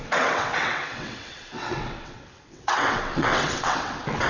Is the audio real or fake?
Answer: fake